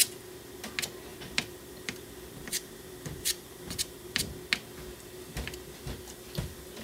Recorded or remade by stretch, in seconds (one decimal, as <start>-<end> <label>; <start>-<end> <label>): 0.0-1.1 recorded; 1.1-4.2 remade; 4.2-6.8 recorded